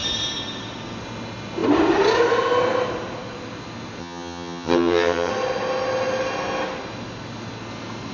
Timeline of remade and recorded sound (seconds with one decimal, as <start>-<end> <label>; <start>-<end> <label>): 0.0-4.0 recorded; 4.0-5.3 remade; 5.3-8.1 recorded